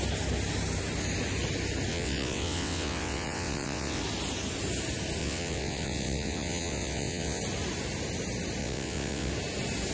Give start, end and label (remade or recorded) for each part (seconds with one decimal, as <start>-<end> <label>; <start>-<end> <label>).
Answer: 0.0-1.9 recorded; 1.9-4.0 remade; 4.0-5.2 recorded; 5.2-7.4 remade; 7.4-8.6 recorded; 8.6-9.3 remade; 9.3-9.9 recorded

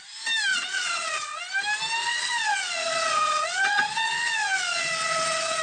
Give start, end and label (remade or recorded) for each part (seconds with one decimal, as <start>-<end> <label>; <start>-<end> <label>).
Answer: 0.0-0.5 recorded; 0.5-1.4 remade; 1.4-2.0 recorded; 2.0-5.6 remade

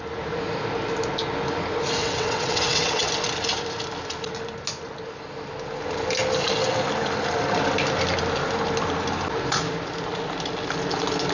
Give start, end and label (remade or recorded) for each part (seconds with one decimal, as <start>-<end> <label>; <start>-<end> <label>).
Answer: 0.0-2.0 recorded; 2.0-3.1 remade; 3.1-11.3 recorded